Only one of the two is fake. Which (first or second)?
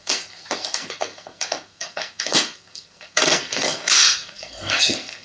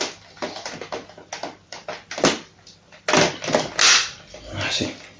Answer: first